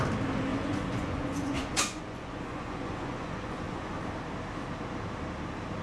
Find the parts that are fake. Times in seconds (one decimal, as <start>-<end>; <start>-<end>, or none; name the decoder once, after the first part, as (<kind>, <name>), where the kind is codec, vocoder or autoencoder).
0.5-4.0 (vocoder, Vocos)